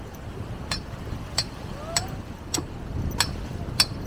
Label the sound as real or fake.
real